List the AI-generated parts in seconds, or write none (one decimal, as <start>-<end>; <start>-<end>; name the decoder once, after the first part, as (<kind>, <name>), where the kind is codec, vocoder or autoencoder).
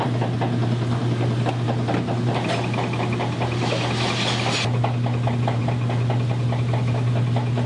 none